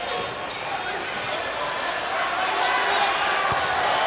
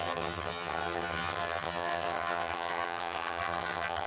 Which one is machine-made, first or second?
second